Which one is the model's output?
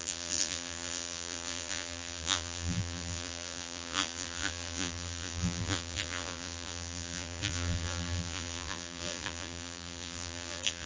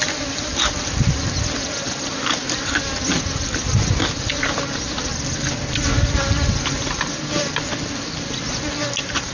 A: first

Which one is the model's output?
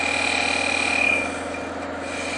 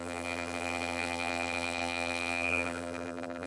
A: second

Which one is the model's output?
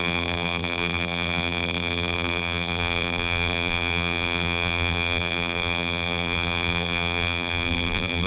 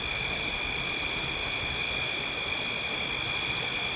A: first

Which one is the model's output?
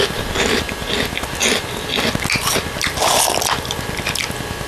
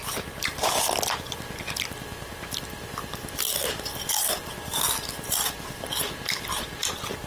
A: second